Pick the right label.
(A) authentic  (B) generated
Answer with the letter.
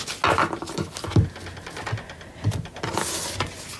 A